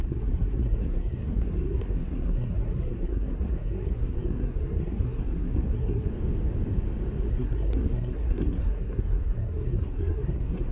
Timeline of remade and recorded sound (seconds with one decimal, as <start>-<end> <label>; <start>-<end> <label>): 0.0-6.1 remade; 6.1-7.3 recorded; 7.3-10.7 remade